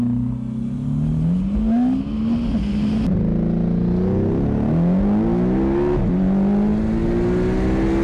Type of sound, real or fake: real